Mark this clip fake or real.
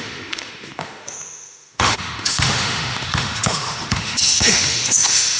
fake